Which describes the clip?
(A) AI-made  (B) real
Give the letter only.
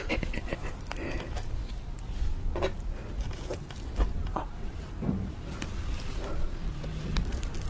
B